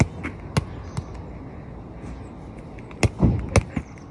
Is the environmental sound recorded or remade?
recorded